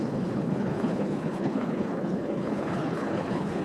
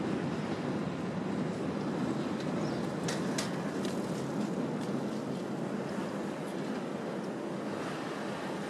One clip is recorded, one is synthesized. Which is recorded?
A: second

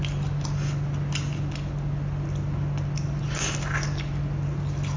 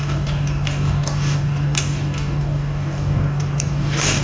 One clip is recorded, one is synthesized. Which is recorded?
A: first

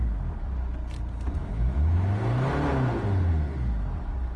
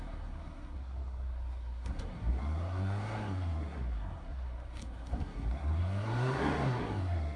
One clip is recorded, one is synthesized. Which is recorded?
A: first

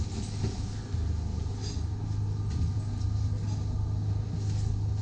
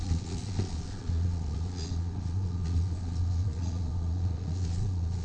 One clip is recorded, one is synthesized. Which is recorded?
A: first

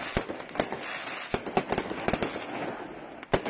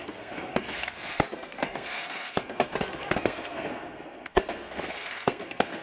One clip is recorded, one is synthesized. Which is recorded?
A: first